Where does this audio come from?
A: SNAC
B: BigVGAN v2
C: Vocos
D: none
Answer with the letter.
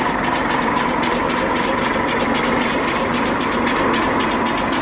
D